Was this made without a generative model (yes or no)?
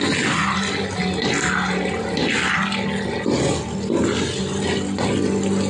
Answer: yes